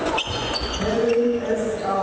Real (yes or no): no